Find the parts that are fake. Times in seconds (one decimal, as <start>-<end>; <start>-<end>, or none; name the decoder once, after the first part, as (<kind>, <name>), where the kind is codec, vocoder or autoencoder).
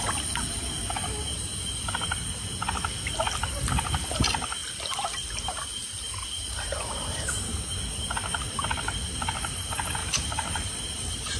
10.0-11.4 (vocoder, BigVGAN v2)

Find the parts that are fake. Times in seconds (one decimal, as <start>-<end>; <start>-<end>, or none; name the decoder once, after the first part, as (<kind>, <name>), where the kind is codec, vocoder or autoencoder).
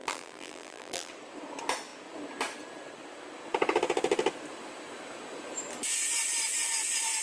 0.0-1.1 (vocoder, BigVGAN v2)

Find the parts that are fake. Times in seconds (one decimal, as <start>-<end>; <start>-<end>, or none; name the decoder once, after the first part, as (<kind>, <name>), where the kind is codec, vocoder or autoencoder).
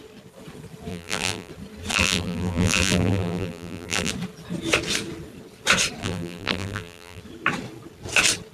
0.9-1.5 (vocoder, BigVGAN v2); 1.9-4.1; 6.0-7.2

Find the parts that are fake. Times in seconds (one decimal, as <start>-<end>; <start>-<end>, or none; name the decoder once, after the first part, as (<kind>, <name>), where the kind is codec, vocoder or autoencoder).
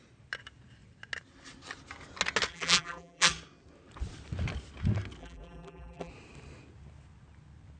2.5-3.3 (vocoder, BigVGAN v2); 5.2-6.1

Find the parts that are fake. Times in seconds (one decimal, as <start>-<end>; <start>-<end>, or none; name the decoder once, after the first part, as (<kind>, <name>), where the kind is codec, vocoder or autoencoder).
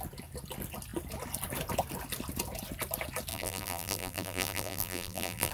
3.3-5.5 (vocoder, BigVGAN v2)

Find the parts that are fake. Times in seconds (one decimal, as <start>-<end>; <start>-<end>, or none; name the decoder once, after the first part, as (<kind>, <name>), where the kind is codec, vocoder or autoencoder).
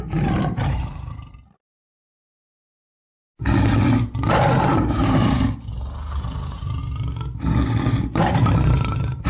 0.0-1.7 (vocoder, BigVGAN v2); 4.5-6.8; 8.0-9.3